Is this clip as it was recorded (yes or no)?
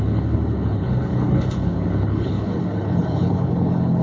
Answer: no